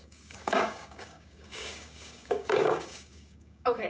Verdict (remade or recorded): remade